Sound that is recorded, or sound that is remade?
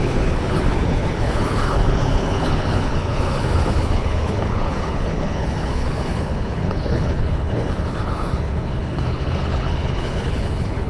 remade